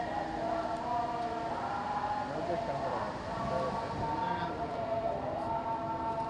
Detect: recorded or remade recorded